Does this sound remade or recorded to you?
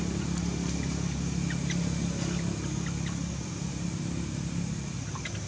recorded